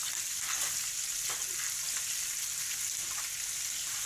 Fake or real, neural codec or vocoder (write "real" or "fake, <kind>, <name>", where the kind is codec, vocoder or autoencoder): real